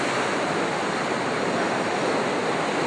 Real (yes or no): yes